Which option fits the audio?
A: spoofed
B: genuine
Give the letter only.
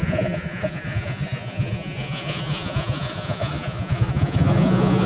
A